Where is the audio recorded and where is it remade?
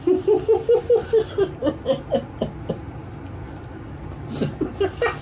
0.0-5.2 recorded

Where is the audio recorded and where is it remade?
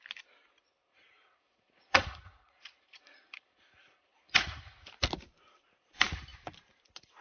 0.0-0.9 recorded; 0.9-4.9 remade; 4.9-7.2 recorded